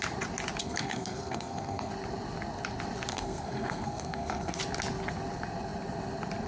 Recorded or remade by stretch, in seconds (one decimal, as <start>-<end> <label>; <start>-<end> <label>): 0.0-0.6 recorded; 0.6-1.9 remade; 1.9-3.1 recorded; 3.1-4.6 remade; 4.6-6.5 recorded